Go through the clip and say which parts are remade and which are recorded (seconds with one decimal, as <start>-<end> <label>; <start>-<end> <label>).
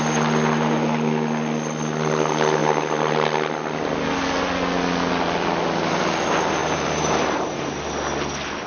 0.0-6.6 recorded; 6.6-7.7 remade; 7.7-8.7 recorded